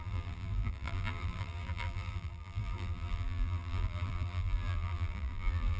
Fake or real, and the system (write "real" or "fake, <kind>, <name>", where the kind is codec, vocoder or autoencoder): fake, vocoder, BigVGAN v2